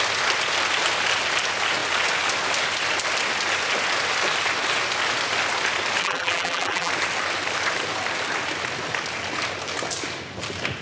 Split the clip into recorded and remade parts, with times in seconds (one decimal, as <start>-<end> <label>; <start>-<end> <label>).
0.0-6.0 recorded; 6.0-6.9 remade; 6.9-10.8 recorded